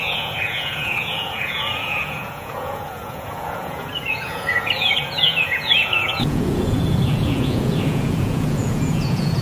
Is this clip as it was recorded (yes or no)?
no